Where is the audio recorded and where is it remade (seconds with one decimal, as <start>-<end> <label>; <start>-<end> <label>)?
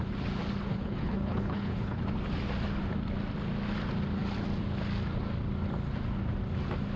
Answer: 0.0-0.7 recorded; 0.7-2.0 remade; 2.0-7.0 recorded